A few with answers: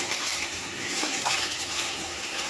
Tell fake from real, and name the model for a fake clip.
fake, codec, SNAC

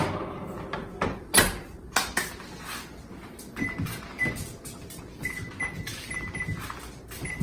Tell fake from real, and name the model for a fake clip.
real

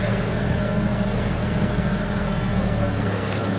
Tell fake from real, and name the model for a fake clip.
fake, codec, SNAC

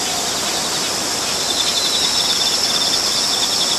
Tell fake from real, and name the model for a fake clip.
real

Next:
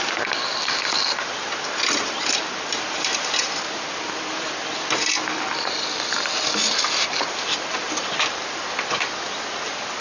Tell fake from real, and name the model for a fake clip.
real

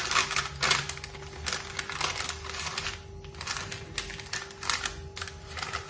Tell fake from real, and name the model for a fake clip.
real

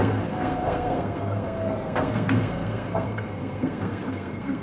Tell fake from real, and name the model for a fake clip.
fake, codec, SNAC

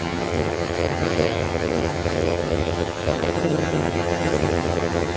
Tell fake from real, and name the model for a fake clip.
fake, vocoder, HiFi-GAN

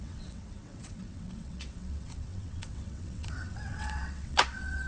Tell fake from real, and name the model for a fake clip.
fake, vocoder, WaveNeXt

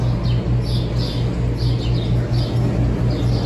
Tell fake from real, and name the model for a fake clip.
real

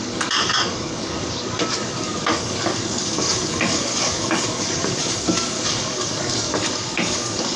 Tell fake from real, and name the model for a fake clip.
fake, codec, DAC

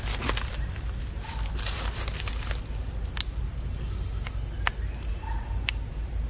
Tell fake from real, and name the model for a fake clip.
real